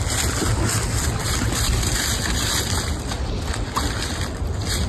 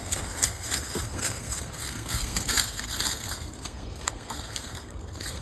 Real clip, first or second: first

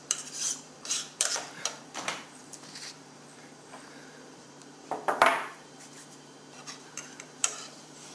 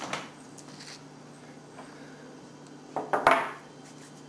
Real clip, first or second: second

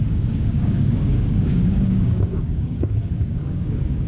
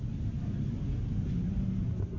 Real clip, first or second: second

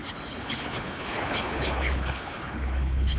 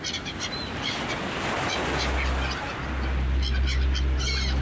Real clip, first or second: second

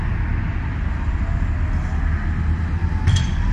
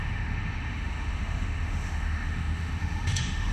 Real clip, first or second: first